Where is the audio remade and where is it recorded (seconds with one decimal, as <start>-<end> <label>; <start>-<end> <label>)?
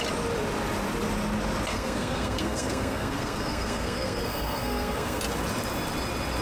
0.0-1.7 recorded; 1.7-5.2 remade; 5.2-6.4 recorded